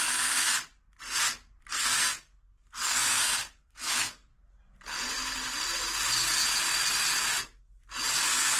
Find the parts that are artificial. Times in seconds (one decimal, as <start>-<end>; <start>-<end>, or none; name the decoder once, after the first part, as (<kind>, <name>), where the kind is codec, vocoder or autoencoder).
0.0-0.5 (codec, SNAC); 1.7-4.3; 8.1-8.6